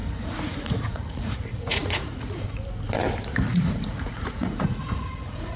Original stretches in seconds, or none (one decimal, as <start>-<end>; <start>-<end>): 2.6-3.5

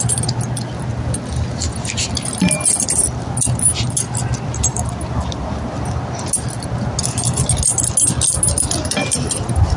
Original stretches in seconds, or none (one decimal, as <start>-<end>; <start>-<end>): 0.0-9.8